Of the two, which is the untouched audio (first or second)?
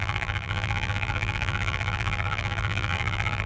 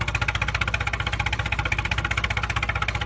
second